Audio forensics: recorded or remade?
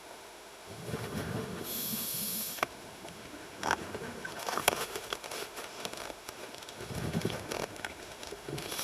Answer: remade